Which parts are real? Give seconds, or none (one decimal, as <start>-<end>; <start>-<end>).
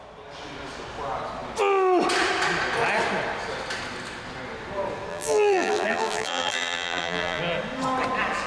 0.0-5.1; 7.4-8.5